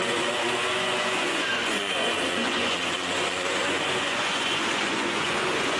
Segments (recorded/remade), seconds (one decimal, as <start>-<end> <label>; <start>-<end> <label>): 0.0-5.8 remade